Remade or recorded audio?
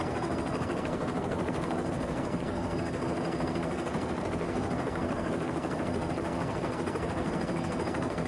remade